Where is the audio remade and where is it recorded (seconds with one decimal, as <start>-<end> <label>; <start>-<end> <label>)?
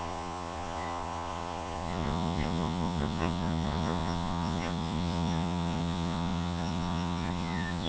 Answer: 0.0-7.9 remade